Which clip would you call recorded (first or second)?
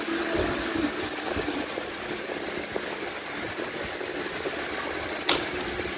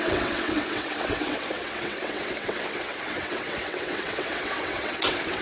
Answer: first